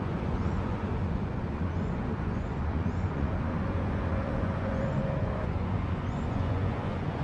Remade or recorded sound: remade